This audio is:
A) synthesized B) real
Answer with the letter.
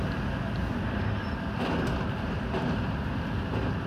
B